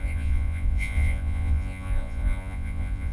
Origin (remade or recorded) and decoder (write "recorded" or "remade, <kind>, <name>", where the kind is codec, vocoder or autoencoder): remade, vocoder, Vocos